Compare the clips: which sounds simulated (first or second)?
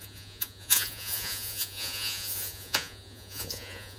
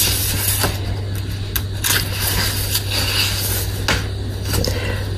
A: first